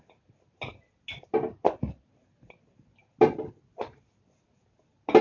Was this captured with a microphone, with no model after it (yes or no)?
yes